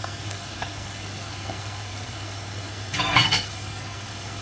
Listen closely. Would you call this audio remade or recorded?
remade